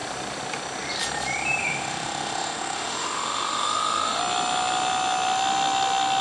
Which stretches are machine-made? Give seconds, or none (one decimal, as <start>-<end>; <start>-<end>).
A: 1.6-4.2